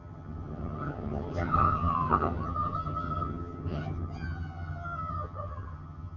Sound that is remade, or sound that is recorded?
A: remade